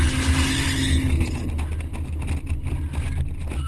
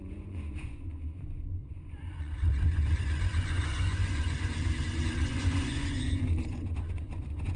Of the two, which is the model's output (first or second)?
second